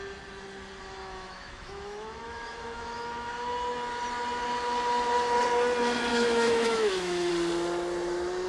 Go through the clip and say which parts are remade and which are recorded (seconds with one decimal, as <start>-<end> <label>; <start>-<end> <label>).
0.0-1.0 recorded; 1.0-3.3 remade; 3.3-6.1 recorded; 6.1-7.3 remade; 7.3-8.5 recorded